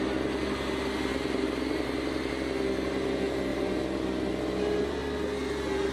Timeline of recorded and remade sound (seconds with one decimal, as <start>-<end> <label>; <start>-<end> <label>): 0.0-1.1 recorded; 1.1-2.3 remade; 2.3-3.5 recorded; 3.5-4.3 remade; 4.3-5.9 recorded

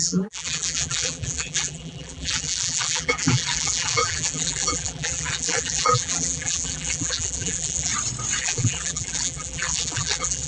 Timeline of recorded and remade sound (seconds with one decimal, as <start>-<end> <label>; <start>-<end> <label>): 0.0-7.9 remade; 7.9-8.4 recorded; 8.4-10.5 remade

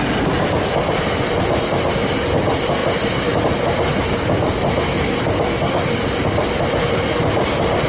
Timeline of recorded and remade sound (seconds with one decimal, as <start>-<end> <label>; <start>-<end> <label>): 0.0-2.8 recorded; 2.8-3.4 remade; 3.4-7.9 recorded

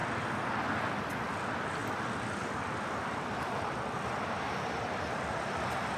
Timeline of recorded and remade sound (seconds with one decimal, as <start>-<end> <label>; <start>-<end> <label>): 0.0-1.8 recorded; 1.8-5.4 remade; 5.4-6.0 recorded

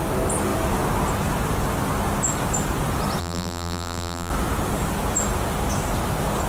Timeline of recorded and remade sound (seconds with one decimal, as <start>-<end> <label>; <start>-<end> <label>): 0.0-3.2 recorded; 3.2-4.3 remade; 4.3-6.5 recorded

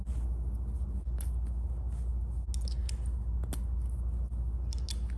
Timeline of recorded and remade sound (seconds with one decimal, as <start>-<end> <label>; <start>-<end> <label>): 0.0-5.2 recorded

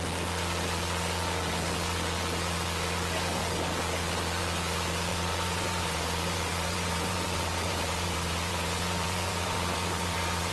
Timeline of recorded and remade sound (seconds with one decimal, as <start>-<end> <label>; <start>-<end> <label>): 0.0-5.1 recorded; 5.1-10.5 remade

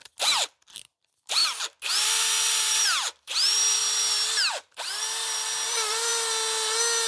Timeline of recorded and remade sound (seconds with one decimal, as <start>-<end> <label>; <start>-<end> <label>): 0.0-1.4 remade; 1.4-1.9 recorded; 1.9-3.8 remade; 3.8-4.5 recorded; 4.5-6.1 remade; 6.1-7.1 recorded